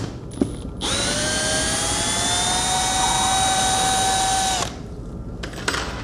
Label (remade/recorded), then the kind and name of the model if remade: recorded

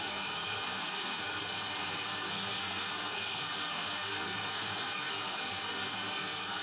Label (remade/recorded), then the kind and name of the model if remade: remade, codec, SNAC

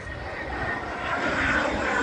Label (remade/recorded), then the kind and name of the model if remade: recorded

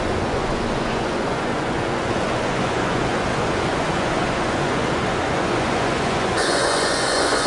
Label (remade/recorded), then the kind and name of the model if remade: remade, vocoder, Vocos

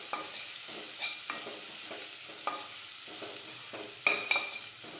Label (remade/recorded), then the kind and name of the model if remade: recorded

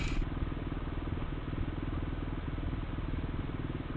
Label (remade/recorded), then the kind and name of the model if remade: recorded